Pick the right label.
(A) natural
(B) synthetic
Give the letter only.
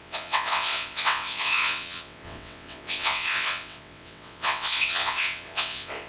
B